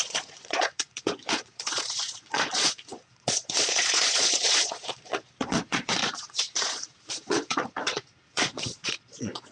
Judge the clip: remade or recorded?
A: remade